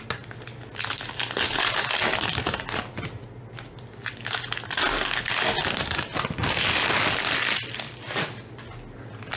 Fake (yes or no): no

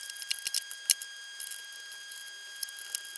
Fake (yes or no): no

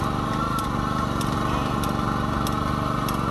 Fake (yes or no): no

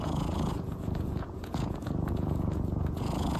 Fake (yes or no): yes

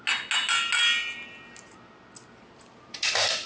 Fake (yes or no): no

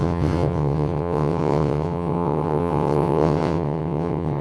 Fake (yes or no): yes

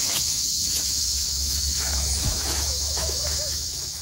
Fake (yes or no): yes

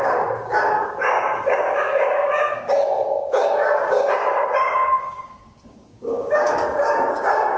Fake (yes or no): yes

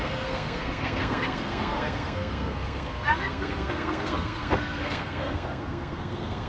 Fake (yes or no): yes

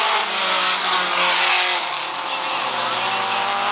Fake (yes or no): no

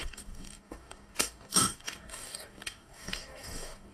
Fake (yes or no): yes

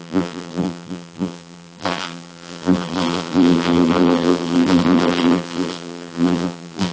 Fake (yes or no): yes